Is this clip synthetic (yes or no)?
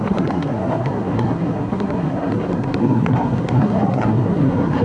yes